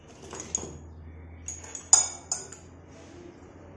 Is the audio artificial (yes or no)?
no